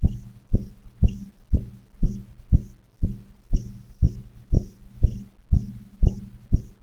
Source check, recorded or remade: recorded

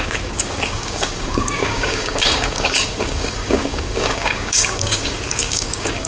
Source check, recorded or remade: remade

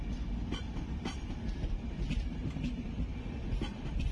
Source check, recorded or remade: remade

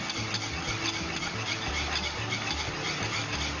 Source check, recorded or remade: recorded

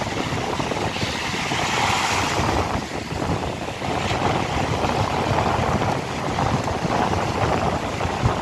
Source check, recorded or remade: recorded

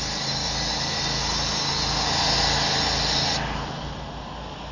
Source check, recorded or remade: recorded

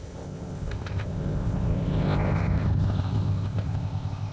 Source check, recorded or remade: remade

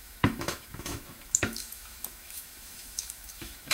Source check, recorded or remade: remade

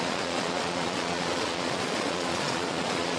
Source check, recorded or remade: remade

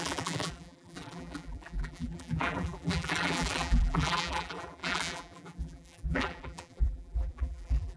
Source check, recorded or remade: remade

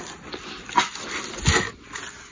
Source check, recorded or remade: recorded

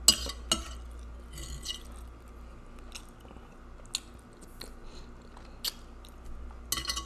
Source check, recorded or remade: recorded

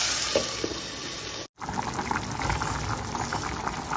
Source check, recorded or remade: recorded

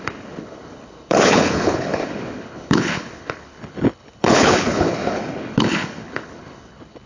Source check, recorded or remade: remade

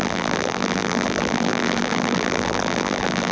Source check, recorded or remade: remade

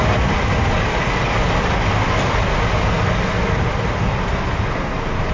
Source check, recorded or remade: recorded